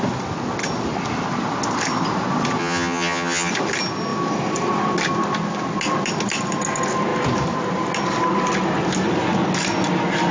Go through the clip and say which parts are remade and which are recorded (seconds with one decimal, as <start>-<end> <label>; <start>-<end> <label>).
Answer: 0.0-2.6 recorded; 2.6-3.5 remade; 3.5-10.3 recorded